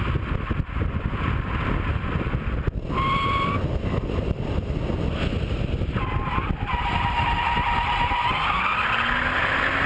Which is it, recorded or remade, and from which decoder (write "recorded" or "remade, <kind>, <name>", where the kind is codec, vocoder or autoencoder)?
recorded